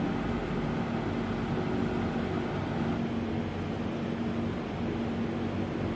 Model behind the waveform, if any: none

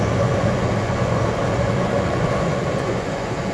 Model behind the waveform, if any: vocoder, Vocos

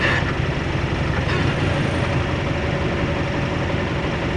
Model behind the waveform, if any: none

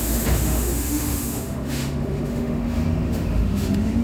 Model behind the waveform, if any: autoencoder, DAC-VAE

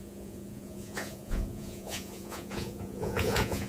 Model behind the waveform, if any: vocoder, Vocos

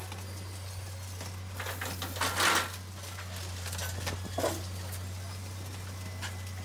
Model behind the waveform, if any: none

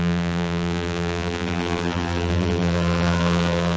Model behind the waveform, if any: vocoder, BigVGAN v2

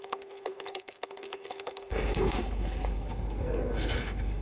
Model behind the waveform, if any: codec, SNAC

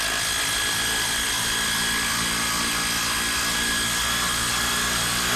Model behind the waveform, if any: none